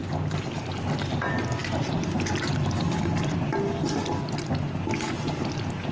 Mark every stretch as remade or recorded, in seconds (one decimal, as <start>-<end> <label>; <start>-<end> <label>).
0.0-5.9 recorded